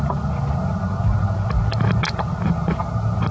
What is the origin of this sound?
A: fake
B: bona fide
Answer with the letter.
B